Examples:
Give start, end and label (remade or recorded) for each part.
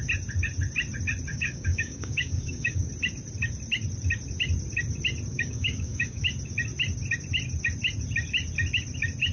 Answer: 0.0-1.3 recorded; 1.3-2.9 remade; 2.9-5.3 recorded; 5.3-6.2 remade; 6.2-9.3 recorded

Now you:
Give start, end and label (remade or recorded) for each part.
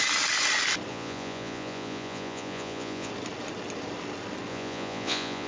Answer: 0.0-0.9 recorded; 0.9-3.1 remade; 3.1-4.5 recorded; 4.5-5.5 remade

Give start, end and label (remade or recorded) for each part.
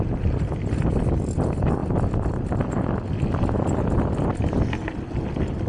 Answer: 0.0-5.7 recorded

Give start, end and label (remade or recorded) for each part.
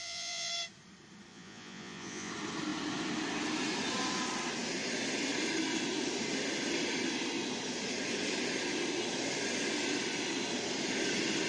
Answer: 0.0-0.5 remade; 0.5-1.3 recorded; 1.3-2.3 remade; 2.3-11.5 recorded